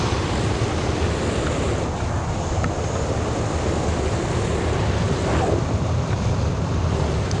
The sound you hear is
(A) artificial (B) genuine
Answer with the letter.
B